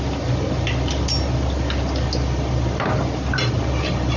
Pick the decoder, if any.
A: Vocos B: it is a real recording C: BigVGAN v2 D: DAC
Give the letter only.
B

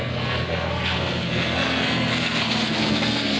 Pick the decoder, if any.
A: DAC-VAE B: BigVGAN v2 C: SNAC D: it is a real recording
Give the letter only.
C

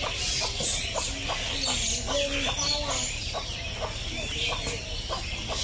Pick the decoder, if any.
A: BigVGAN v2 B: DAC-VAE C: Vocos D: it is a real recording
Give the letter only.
D